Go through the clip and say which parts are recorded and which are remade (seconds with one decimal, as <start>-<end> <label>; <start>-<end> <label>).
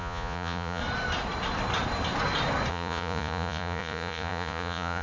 0.0-0.8 remade; 0.8-2.7 recorded; 2.7-5.0 remade